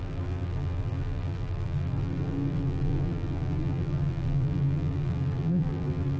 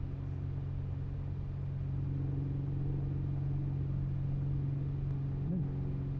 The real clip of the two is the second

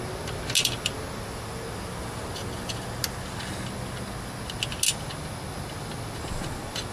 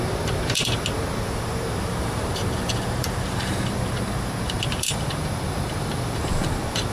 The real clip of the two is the first